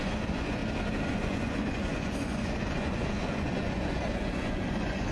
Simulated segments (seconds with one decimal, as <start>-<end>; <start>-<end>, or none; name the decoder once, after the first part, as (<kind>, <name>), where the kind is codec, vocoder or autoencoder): 0.0-0.6 (vocoder, Vocos); 1.1-5.1